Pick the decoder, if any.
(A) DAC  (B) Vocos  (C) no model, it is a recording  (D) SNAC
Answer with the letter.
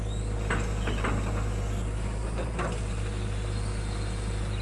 C